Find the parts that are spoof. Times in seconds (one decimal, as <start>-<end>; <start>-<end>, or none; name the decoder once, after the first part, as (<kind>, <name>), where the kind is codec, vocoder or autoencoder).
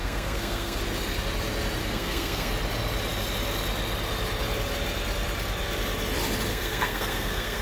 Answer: 0.0-0.8 (codec, SNAC); 1.8-2.5; 6.5-7.6